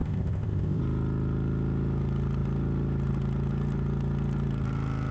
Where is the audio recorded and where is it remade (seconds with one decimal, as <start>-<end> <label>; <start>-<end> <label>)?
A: 0.0-0.8 remade; 0.8-5.1 recorded